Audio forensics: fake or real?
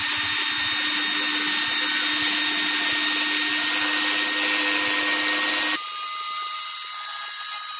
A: real